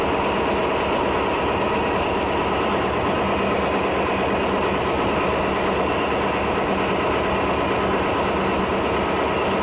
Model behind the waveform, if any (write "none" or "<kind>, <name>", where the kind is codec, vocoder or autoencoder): none